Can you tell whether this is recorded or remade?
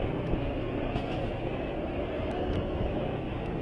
remade